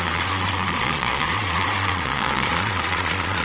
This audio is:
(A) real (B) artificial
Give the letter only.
B